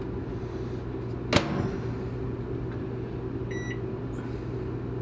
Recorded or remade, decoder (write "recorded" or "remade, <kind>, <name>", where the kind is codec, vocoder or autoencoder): recorded